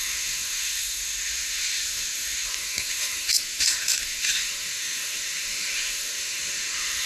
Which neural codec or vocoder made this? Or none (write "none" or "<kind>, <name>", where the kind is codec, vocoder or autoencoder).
autoencoder, DAC-VAE